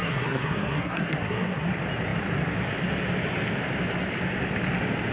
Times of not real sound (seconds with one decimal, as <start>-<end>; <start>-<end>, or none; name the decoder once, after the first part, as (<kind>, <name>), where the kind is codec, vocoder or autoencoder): 0.0-1.7 (codec, SNAC)